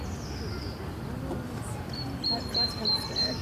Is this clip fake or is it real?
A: real